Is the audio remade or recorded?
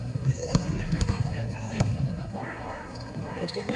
remade